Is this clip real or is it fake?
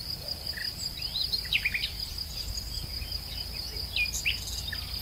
real